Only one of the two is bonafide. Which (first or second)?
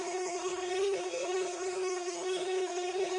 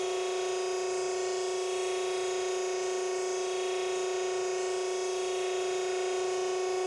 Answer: second